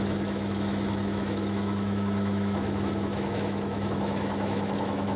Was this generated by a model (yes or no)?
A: yes